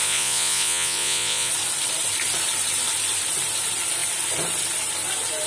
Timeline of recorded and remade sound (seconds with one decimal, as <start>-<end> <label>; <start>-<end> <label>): 0.0-1.5 remade; 1.5-5.5 recorded